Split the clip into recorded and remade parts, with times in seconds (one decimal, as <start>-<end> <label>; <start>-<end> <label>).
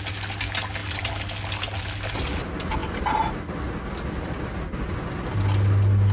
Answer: 0.0-6.1 recorded